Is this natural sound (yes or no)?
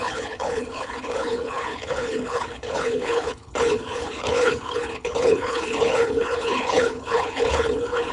no